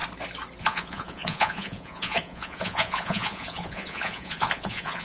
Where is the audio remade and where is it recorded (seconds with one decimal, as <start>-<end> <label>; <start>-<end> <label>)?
0.0-0.6 recorded; 0.6-5.0 remade